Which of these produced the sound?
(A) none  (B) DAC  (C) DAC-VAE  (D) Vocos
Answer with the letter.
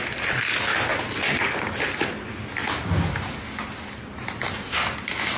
A